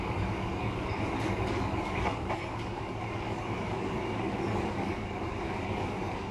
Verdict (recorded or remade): remade